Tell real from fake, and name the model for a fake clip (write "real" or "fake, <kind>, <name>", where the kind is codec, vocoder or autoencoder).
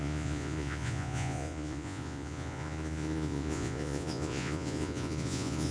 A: fake, vocoder, Vocos